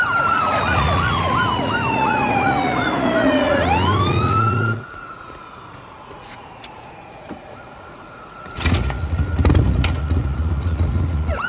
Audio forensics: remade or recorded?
remade